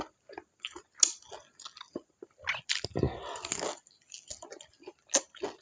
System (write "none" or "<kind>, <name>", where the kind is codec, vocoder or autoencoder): none